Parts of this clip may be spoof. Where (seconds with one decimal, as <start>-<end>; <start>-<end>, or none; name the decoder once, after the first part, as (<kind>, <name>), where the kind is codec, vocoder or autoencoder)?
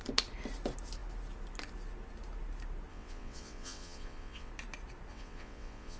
2.9-4.5 (vocoder, WaveNeXt); 5.1-6.0